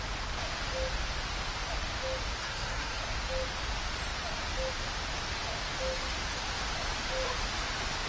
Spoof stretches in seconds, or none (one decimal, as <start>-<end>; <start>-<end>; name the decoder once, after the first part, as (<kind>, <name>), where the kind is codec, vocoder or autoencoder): 2.4-3.0 (codec, SNAC)